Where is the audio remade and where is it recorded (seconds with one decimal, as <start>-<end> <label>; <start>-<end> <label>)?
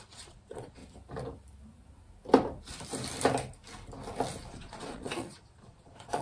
0.0-0.8 remade; 0.8-4.5 recorded; 4.5-6.2 remade